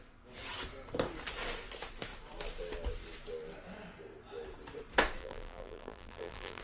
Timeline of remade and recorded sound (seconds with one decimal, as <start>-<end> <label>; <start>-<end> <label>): 0.0-5.2 recorded; 5.2-6.6 remade